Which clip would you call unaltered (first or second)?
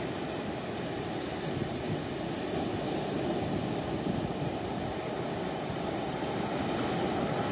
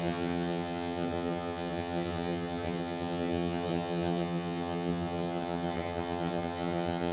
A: first